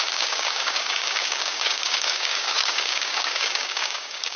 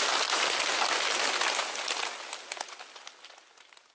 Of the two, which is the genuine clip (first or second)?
second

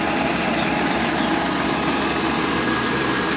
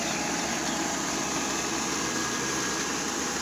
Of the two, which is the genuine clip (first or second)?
second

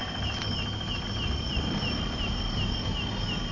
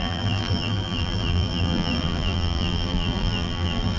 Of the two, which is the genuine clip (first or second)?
first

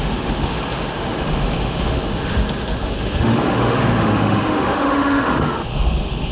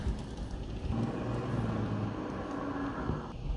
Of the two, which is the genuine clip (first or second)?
second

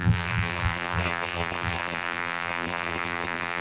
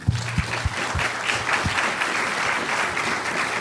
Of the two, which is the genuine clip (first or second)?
second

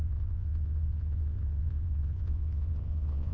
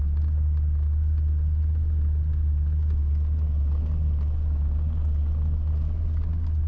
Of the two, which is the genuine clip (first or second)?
second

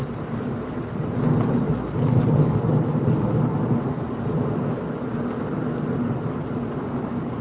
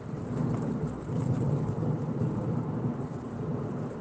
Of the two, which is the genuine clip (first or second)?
first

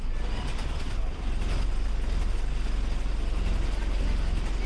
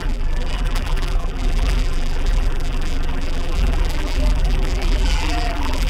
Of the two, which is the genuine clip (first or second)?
first